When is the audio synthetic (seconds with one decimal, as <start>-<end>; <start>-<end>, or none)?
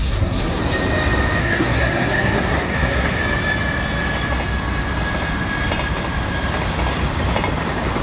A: 0.0-0.6; 1.4-3.2